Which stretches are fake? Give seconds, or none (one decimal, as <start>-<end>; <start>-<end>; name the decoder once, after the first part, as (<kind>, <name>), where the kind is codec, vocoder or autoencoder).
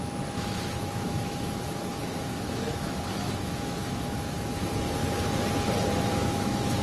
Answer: 0.0-5.0 (autoencoder, DAC-VAE); 5.9-6.8